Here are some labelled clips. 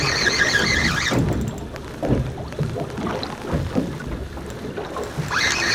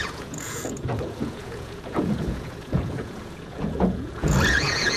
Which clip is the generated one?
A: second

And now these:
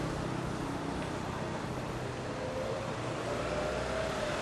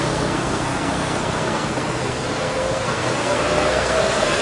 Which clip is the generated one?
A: second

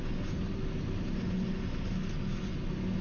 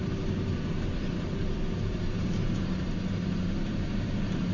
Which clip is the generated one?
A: second